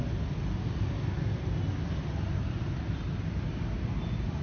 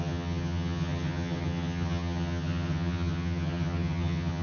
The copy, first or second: second